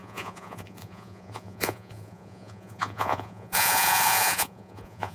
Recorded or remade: remade